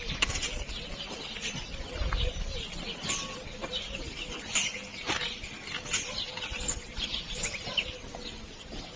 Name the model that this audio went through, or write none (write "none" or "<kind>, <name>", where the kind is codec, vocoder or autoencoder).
none